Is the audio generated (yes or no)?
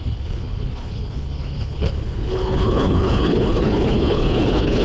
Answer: yes